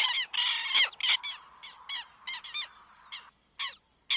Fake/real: real